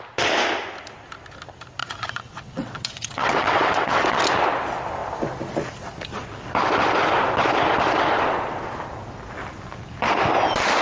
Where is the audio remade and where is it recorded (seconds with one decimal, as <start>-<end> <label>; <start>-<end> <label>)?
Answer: 0.0-1.8 recorded; 1.8-4.2 remade; 4.2-10.8 recorded